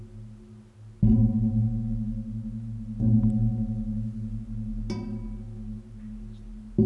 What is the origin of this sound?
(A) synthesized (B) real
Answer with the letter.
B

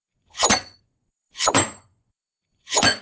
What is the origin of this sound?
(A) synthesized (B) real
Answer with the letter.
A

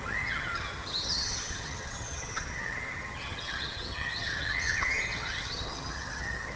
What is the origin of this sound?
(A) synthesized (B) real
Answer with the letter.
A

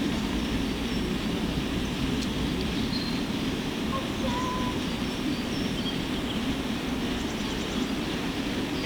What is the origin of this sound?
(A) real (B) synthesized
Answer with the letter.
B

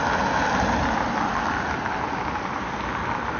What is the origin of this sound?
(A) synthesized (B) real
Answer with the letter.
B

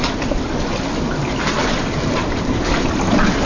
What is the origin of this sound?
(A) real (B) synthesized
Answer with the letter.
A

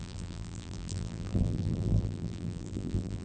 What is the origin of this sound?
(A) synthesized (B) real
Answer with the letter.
A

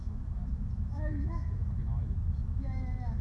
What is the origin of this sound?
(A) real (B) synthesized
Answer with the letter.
B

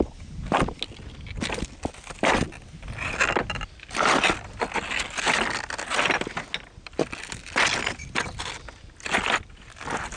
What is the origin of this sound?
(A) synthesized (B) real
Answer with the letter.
B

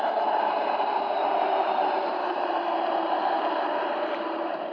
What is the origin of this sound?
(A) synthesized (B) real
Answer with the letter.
A